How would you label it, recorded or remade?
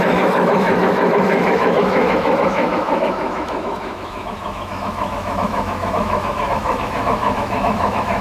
remade